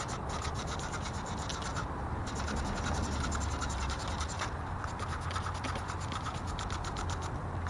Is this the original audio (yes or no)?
yes